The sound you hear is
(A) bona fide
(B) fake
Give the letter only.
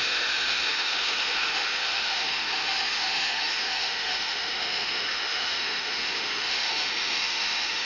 B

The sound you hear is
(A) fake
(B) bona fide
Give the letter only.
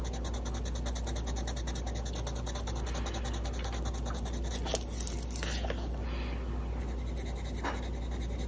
B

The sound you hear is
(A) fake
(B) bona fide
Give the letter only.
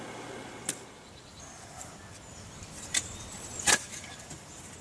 B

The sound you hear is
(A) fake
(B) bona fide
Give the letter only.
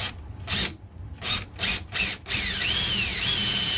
B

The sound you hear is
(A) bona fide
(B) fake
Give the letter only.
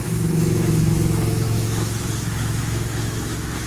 B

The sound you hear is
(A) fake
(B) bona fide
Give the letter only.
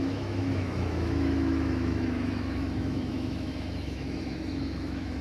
A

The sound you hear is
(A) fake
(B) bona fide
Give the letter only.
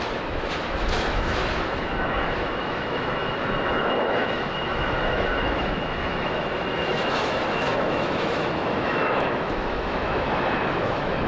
A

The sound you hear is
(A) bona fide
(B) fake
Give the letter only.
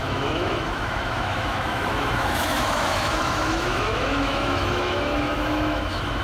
B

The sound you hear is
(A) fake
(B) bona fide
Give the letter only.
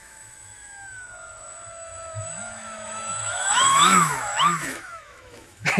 A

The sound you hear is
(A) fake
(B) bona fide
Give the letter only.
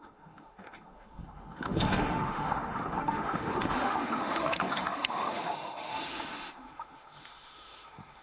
A